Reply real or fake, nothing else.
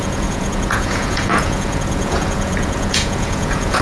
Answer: fake